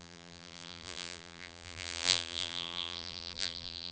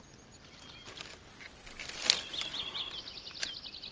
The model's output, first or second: first